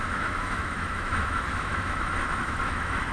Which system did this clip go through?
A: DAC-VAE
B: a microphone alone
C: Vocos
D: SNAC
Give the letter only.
A